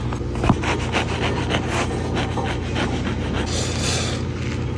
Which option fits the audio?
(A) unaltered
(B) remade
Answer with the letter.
A